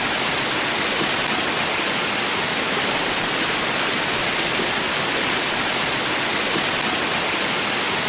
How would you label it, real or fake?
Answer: real